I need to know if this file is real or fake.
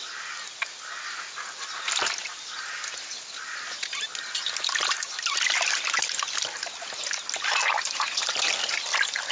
real